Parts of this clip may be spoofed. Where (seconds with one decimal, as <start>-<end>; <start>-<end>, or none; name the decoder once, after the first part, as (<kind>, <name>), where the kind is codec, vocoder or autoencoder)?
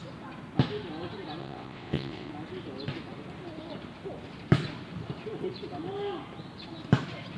1.4-2.3 (vocoder, WaveNeXt)